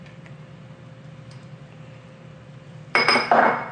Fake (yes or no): yes